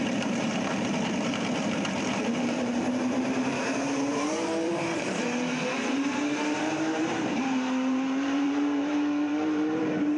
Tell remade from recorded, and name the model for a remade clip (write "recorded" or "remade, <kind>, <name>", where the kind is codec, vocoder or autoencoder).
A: remade, vocoder, BigVGAN v2